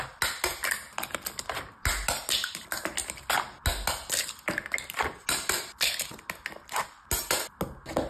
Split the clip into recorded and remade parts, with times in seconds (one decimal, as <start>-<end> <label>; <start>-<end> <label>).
0.0-8.1 recorded